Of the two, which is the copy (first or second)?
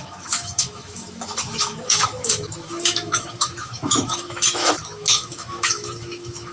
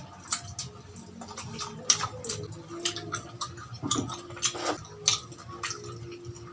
first